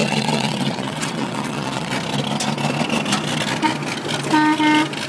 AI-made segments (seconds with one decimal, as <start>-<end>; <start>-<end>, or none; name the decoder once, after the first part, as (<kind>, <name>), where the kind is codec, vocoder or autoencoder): 0.0-1.9 (vocoder, WaveNeXt)